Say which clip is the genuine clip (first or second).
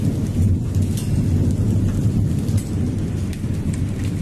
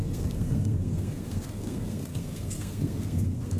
first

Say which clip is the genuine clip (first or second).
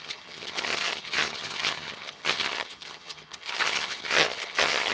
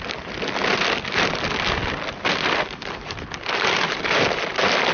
second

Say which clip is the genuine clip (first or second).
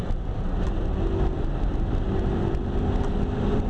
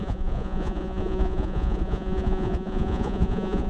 first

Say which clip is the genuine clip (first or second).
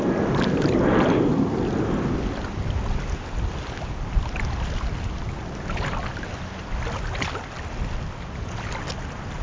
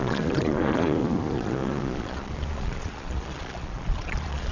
first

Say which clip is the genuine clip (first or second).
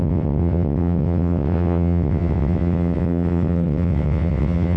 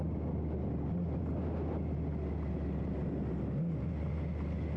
second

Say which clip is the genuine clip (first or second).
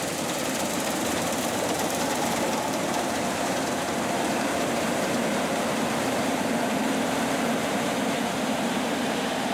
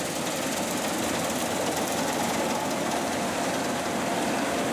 second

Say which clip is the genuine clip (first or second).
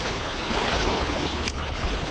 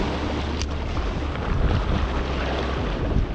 second